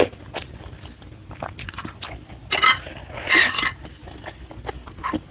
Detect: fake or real real